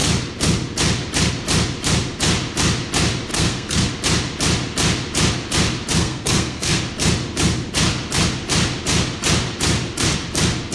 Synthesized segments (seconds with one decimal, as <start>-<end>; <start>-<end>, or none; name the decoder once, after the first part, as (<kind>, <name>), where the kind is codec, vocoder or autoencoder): 3.3-3.9 (codec, SNAC); 6.0-6.8